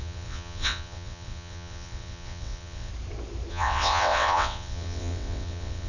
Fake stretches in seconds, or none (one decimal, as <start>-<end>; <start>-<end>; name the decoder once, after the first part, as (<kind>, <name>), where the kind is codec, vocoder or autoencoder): 0.0-2.9 (vocoder, WaveNeXt); 3.5-5.9